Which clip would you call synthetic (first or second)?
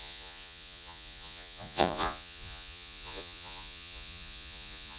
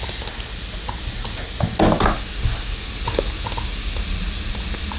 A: first